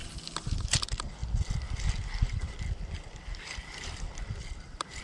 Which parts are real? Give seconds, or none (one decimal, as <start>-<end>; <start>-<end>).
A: 0.0-5.0